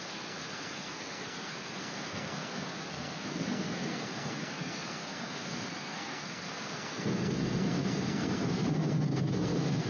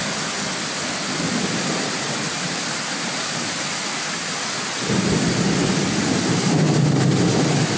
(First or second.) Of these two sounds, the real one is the second